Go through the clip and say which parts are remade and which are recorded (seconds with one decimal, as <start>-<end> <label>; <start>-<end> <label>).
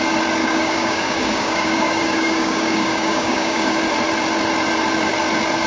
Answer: 0.0-0.4 recorded; 0.4-3.8 remade; 3.8-5.7 recorded